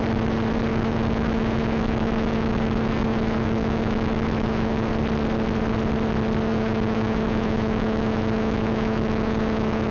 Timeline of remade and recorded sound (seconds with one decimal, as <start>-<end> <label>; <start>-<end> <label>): 0.0-0.7 recorded; 0.7-4.9 remade; 4.9-6.5 recorded; 6.5-9.9 remade